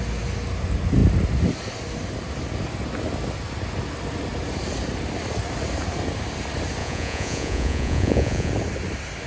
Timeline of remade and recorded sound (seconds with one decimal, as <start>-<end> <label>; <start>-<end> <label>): 0.0-6.8 recorded; 6.8-8.5 remade; 8.5-9.3 recorded